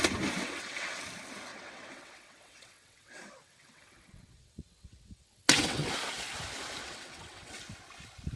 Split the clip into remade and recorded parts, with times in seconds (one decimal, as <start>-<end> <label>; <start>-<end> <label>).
0.0-0.4 recorded; 0.4-1.0 remade; 1.0-1.5 recorded; 1.5-5.9 remade; 5.9-6.8 recorded; 6.8-7.6 remade; 7.6-8.4 recorded